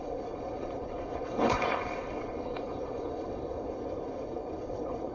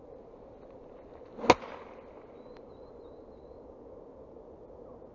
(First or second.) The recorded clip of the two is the second